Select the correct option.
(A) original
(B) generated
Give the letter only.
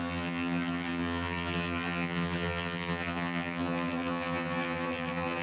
B